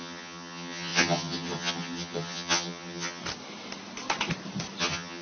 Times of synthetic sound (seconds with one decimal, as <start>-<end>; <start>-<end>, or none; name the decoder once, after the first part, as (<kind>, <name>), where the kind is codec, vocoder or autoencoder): 0.0-3.2 (vocoder, HiFi-GAN); 4.8-5.2